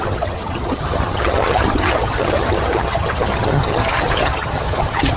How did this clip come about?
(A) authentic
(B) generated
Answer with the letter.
B